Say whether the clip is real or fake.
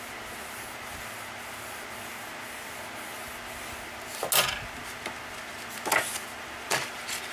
real